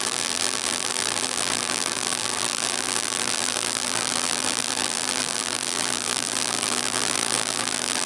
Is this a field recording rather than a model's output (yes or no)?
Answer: no